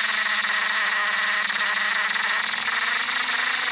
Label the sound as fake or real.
real